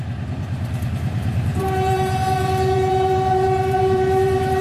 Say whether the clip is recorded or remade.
remade